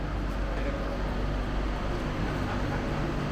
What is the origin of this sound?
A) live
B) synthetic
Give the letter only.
A